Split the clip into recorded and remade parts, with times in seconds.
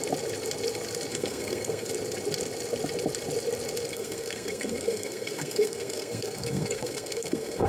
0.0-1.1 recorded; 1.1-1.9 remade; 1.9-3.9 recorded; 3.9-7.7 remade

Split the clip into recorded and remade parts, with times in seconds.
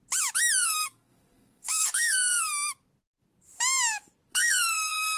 0.0-0.6 recorded; 0.6-2.5 remade; 2.5-4.3 recorded; 4.3-5.2 remade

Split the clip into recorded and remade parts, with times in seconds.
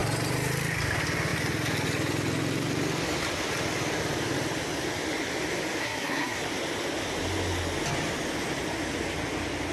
0.0-5.8 recorded; 5.8-6.4 remade; 6.4-9.7 recorded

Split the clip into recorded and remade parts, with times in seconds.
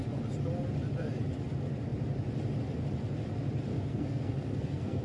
0.0-3.7 recorded; 3.7-5.0 remade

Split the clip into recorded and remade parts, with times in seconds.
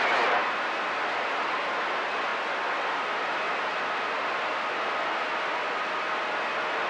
0.0-6.9 recorded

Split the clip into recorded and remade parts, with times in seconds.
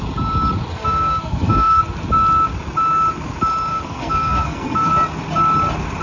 0.0-0.7 recorded; 0.7-1.8 remade; 1.8-3.7 recorded; 3.7-4.9 remade; 4.9-6.0 recorded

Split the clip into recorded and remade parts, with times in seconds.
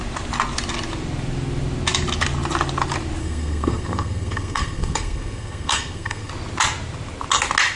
0.0-3.2 recorded; 3.2-6.3 remade; 6.3-7.8 recorded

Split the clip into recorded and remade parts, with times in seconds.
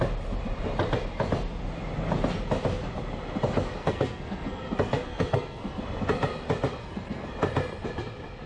0.0-3.8 recorded; 3.8-5.8 remade; 5.8-6.8 recorded; 6.8-7.3 remade; 7.3-8.5 recorded